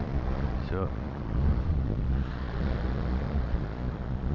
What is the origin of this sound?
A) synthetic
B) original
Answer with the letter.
A